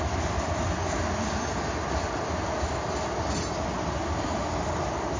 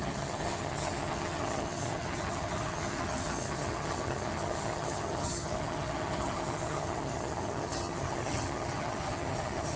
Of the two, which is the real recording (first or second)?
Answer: first